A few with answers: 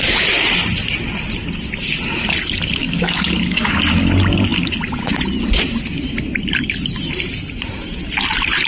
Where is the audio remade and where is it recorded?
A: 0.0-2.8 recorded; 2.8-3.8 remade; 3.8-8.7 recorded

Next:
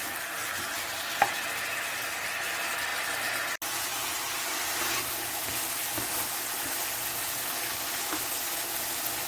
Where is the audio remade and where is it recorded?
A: 0.0-9.3 recorded

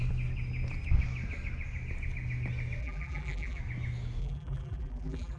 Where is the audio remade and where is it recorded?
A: 0.0-2.8 recorded; 2.8-3.6 remade; 3.6-4.2 recorded; 4.2-5.4 remade